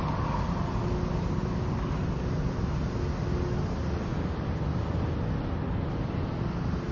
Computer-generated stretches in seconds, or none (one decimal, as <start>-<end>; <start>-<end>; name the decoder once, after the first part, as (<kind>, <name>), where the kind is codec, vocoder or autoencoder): none